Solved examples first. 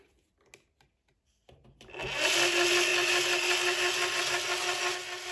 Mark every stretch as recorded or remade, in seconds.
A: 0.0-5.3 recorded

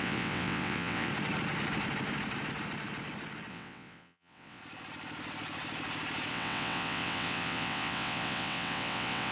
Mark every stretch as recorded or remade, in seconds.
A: 0.0-1.1 remade; 1.1-3.5 recorded; 3.5-4.6 remade; 4.6-6.3 recorded; 6.3-9.3 remade

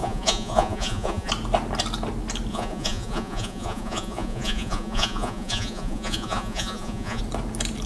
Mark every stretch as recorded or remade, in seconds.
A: 0.0-1.3 remade; 1.3-2.5 recorded; 2.5-7.2 remade; 7.2-7.9 recorded

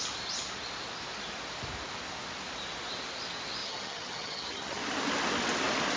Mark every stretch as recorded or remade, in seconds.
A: 0.0-3.6 recorded; 3.6-4.8 remade; 4.8-6.0 recorded

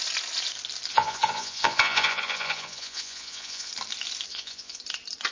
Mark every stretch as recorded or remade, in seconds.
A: 0.0-0.9 recorded; 0.9-3.7 remade; 3.7-4.3 recorded; 4.3-4.8 remade; 4.8-5.3 recorded

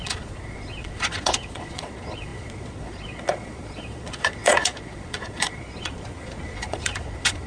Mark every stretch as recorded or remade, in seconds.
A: 0.0-7.5 remade

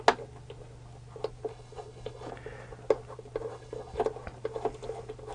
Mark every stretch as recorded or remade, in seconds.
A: 0.0-1.5 recorded; 1.5-2.3 remade; 2.3-3.5 recorded; 3.5-4.0 remade; 4.0-5.3 recorded